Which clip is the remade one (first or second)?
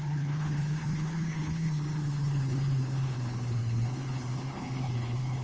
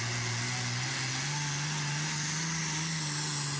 first